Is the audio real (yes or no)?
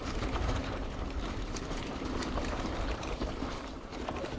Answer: no